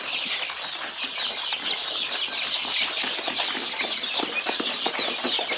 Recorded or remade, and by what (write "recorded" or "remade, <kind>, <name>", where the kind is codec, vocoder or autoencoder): recorded